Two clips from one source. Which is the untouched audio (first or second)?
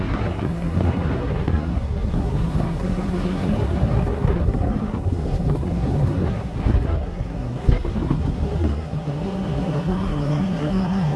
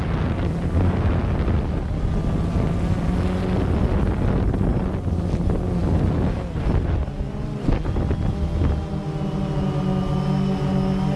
second